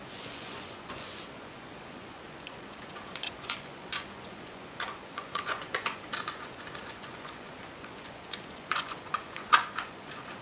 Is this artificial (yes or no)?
yes